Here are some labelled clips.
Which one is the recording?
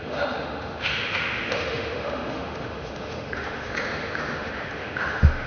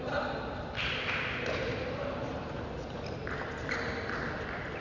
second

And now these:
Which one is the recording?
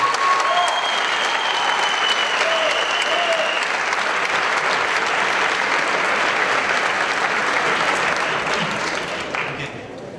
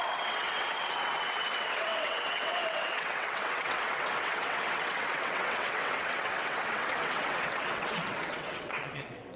first